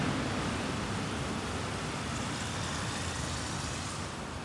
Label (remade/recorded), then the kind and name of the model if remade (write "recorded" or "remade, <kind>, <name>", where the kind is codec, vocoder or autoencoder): recorded